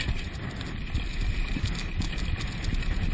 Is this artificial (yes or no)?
no